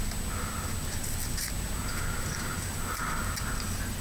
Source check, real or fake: real